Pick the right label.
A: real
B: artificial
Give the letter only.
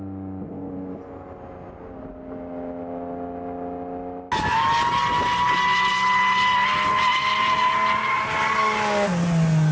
A